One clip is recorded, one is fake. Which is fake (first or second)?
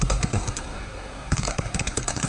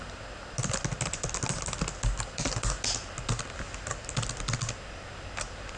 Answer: first